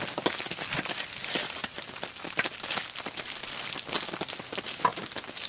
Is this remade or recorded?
recorded